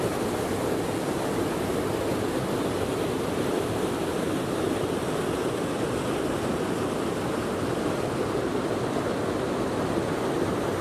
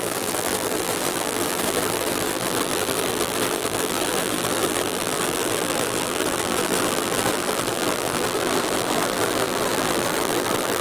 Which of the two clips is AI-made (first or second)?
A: second